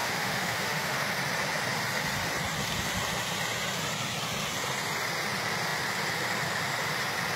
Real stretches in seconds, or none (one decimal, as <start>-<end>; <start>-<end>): 1.1-7.4